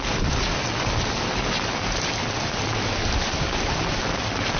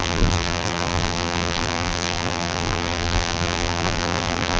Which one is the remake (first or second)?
second